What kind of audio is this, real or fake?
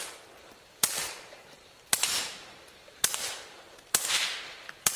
fake